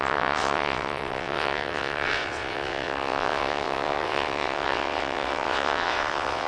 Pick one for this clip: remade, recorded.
remade